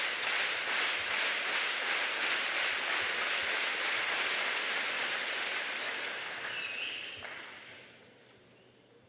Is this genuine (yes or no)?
yes